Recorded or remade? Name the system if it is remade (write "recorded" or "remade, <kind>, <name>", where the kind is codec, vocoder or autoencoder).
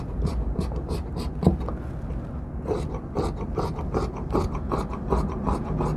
recorded